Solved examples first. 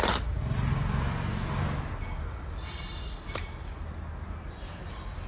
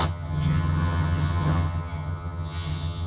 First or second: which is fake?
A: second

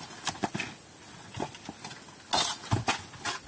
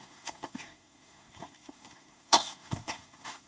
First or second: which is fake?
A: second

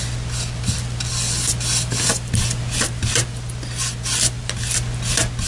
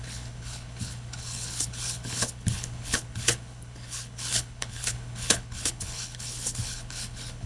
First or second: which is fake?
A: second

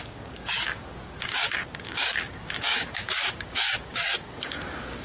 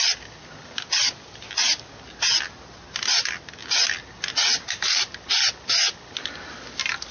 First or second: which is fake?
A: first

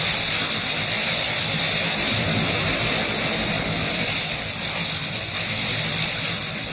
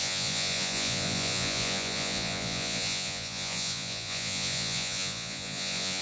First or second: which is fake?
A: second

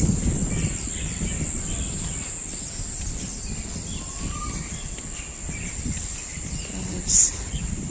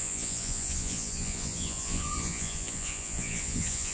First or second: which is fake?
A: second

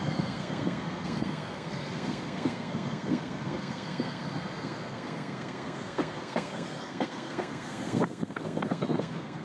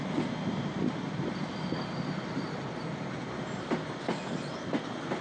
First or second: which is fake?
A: first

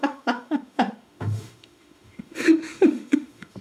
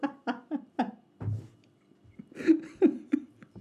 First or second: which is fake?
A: first